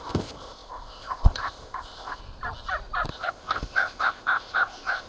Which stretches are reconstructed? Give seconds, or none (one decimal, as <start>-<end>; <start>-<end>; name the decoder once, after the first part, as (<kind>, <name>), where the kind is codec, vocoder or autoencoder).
0.0-2.2 (codec, ZipCodec); 3.1-5.1